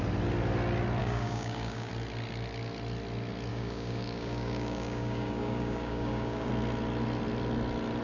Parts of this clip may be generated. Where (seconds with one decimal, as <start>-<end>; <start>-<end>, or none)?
1.0-1.9; 3.5-6.5